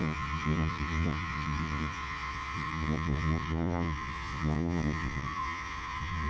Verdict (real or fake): fake